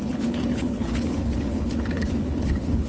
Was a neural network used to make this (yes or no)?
yes